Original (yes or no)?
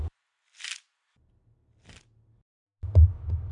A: yes